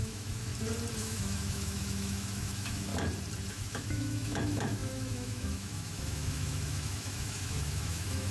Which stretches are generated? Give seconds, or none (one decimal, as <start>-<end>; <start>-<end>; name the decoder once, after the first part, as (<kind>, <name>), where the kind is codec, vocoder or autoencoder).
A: 0.0-0.5 (autoencoder, DAC-VAE); 1.0-2.9; 3.5-8.3